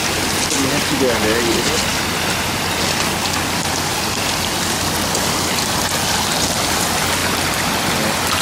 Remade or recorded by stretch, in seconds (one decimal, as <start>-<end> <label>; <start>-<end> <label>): 0.0-8.4 recorded

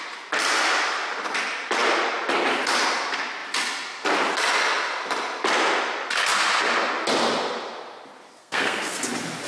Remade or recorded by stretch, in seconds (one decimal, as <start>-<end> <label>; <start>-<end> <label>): 0.0-8.4 recorded; 8.4-9.0 remade; 9.0-9.5 recorded

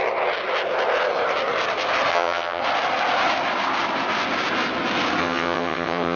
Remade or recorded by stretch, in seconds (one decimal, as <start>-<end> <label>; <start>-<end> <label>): 0.0-2.1 recorded; 2.1-2.6 remade; 2.6-5.2 recorded; 5.2-6.2 remade

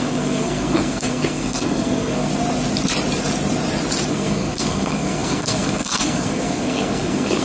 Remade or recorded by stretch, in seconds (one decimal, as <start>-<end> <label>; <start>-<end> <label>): 0.0-2.3 remade; 2.3-4.1 recorded; 4.1-7.4 remade